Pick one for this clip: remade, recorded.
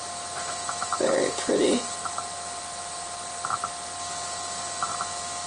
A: recorded